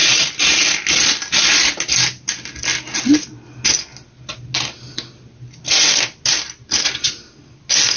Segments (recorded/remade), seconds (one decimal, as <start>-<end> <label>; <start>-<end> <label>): 0.0-8.0 recorded